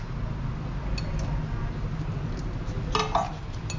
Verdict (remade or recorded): recorded